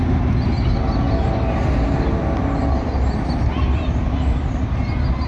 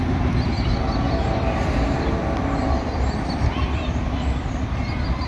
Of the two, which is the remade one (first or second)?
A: second